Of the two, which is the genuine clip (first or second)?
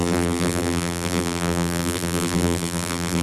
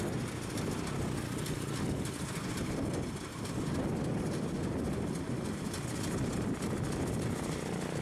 second